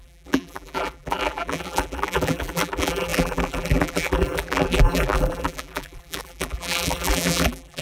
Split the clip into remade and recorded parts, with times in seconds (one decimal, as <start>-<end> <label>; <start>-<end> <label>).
0.0-7.8 remade